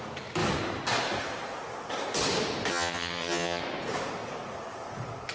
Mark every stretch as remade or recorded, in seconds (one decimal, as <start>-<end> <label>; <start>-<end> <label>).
0.0-2.7 recorded; 2.7-3.6 remade; 3.6-5.3 recorded